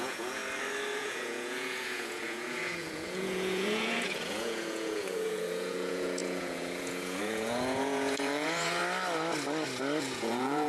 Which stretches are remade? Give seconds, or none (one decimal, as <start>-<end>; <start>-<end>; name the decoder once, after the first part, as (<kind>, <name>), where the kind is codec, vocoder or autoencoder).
0.0-0.4 (vocoder, Vocos); 1.0-8.8; 10.0-10.7